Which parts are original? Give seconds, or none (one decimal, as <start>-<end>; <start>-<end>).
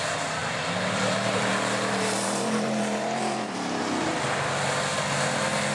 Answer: 0.0-0.4; 3.8-5.7